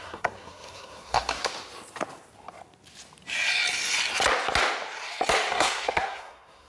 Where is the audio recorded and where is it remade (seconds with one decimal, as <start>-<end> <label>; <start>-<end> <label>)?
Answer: 0.0-1.5 remade; 1.5-5.5 recorded; 5.5-6.7 remade